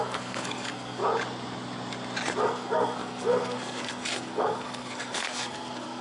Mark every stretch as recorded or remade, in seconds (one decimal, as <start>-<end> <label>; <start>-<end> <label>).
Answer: 0.0-1.0 remade; 1.0-2.4 recorded; 2.4-6.0 remade